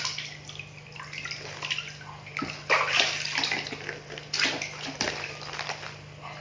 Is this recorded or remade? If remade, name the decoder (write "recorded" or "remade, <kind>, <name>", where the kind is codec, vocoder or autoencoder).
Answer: recorded